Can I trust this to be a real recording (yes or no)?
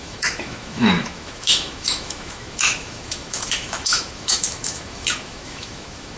no